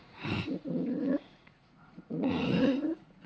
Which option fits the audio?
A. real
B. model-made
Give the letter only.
B